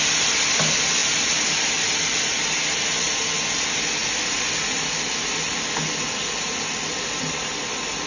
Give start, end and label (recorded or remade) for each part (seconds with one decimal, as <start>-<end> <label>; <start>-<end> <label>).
0.0-8.1 recorded